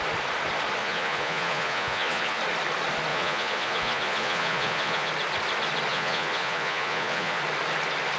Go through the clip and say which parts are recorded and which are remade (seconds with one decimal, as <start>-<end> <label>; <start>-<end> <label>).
0.0-0.8 recorded; 0.8-2.4 remade; 2.4-3.1 recorded; 3.1-5.1 remade; 5.1-5.9 recorded; 5.9-7.4 remade; 7.4-8.2 recorded